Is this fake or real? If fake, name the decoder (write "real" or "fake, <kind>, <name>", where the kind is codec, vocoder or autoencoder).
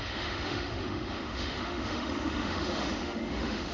fake, autoencoder, DAC-VAE